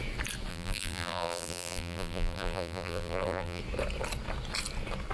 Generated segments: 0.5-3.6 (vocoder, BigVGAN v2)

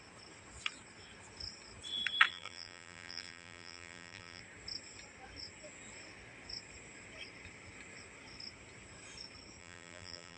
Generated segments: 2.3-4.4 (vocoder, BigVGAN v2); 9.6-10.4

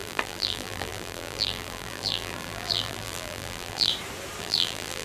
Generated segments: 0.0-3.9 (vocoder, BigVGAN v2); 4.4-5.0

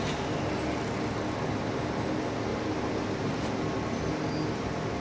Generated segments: 2.5-3.3 (vocoder, BigVGAN v2)

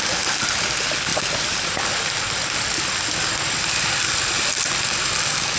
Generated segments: 1.1-1.9 (vocoder, BigVGAN v2)

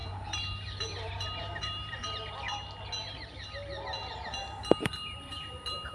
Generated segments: 0.0-2.0 (vocoder, BigVGAN v2); 4.4-5.9